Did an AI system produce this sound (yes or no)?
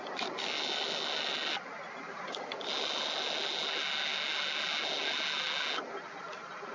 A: no